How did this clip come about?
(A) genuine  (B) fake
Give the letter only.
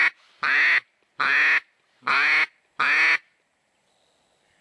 A